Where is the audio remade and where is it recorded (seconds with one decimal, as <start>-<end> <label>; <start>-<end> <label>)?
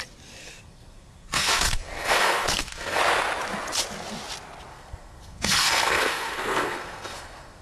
0.0-0.4 recorded; 0.4-3.0 remade; 3.0-4.7 recorded; 4.7-7.6 remade